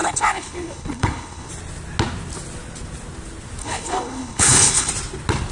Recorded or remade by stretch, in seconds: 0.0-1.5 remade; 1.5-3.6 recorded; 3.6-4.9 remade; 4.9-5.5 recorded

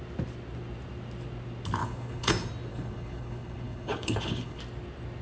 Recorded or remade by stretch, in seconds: 0.0-1.8 recorded; 1.8-2.3 remade; 2.3-2.7 recorded; 2.7-4.6 remade; 4.6-5.2 recorded

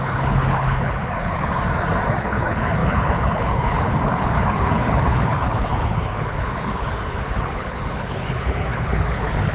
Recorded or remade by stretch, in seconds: 0.0-1.6 remade; 1.6-2.1 recorded; 2.1-9.5 remade

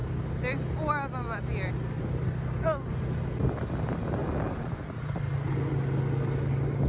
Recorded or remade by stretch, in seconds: 0.0-6.9 recorded

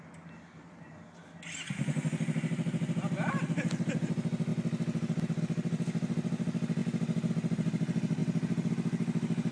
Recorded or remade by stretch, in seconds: 0.0-9.5 recorded

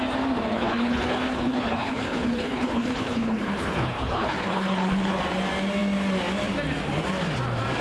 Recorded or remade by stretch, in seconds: 0.0-0.5 recorded; 0.5-5.2 remade; 5.2-7.8 recorded